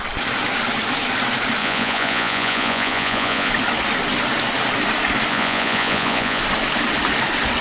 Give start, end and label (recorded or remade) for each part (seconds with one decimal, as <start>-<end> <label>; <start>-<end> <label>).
0.0-1.6 recorded; 1.6-3.5 remade; 3.5-5.3 recorded; 5.3-6.4 remade; 6.4-7.6 recorded

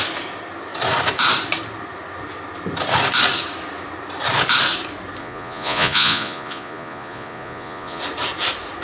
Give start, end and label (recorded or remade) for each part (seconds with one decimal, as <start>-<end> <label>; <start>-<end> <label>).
0.0-5.2 recorded; 5.2-8.0 remade; 8.0-8.8 recorded

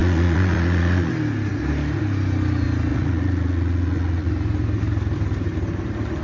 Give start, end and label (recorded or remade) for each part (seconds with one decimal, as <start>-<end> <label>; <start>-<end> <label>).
0.0-1.1 remade; 1.1-2.9 recorded; 2.9-4.3 remade; 4.3-6.2 recorded

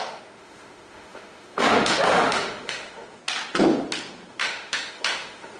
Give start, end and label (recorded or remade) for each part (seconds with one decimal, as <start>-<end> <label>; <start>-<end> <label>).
0.0-3.2 remade; 3.2-4.3 recorded; 4.3-5.6 remade

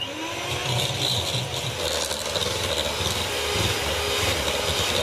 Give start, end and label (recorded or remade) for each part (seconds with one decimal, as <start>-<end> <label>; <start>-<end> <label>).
0.0-5.0 recorded